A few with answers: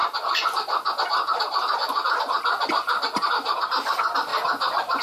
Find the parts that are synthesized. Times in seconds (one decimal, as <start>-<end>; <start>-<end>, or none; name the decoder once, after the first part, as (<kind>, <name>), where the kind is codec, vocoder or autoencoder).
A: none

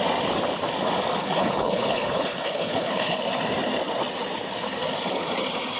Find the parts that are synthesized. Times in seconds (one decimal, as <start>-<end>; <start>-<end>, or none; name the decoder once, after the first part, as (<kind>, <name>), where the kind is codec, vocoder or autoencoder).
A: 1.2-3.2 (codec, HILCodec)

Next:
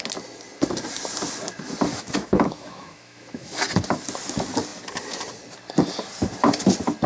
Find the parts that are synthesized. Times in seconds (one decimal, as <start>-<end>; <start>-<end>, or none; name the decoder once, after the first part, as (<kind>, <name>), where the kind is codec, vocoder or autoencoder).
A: 1.9-3.6 (autoencoder, DAC-VAE)

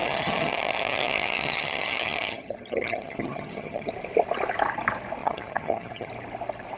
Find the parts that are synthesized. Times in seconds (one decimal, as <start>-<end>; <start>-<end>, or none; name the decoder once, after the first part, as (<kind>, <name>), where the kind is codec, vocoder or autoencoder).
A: 0.0-3.9 (vocoder, HiFi-GAN); 5.2-6.1

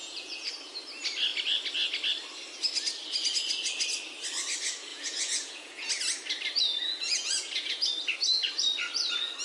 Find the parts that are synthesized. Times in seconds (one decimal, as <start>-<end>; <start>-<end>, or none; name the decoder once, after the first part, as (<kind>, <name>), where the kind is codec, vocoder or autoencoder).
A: 0.0-0.5 (vocoder, Vocos); 4.9-5.9; 6.8-7.9

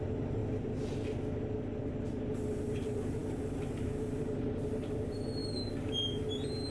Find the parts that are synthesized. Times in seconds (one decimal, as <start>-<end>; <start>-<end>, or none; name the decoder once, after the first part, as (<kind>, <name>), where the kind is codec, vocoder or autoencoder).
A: 0.0-0.4 (vocoder, BigVGAN v2); 2.6-6.7

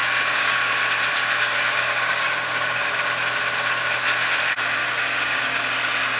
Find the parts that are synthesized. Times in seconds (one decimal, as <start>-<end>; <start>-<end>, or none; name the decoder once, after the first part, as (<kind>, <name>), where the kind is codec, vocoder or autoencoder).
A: 0.0-0.7 (codec, DAC); 1.2-2.9; 4.8-5.6

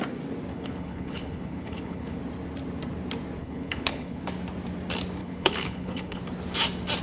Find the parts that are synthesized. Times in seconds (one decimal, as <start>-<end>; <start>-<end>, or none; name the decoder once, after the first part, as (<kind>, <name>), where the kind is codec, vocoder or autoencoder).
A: 0.5-2.2 (codec, HILCodec); 3.4-4.2; 5.2-6.2